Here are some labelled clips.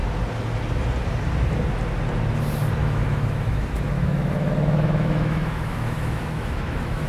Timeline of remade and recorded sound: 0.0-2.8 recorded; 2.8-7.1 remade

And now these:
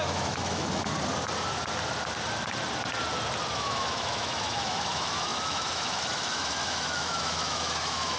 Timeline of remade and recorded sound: 0.0-0.9 remade; 0.9-3.5 recorded; 3.5-8.2 remade

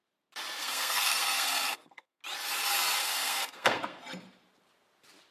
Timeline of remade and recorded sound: 0.0-0.6 recorded; 0.6-2.2 remade; 2.2-3.0 recorded; 3.0-4.0 remade; 4.0-5.3 recorded

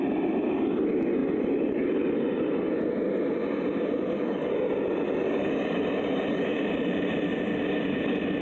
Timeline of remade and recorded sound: 0.0-6.5 recorded; 6.5-7.3 remade; 7.3-8.4 recorded

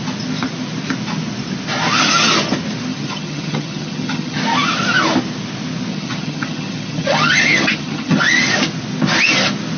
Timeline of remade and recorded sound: 0.0-2.9 recorded; 2.9-4.4 remade; 4.4-5.9 recorded; 5.9-8.2 remade; 8.2-9.8 recorded

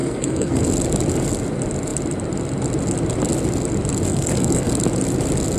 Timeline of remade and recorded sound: 0.0-0.6 remade; 0.6-4.1 recorded; 4.1-4.7 remade; 4.7-5.6 recorded